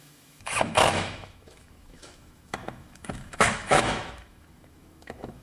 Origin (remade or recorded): remade